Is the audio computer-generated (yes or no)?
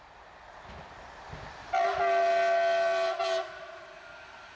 no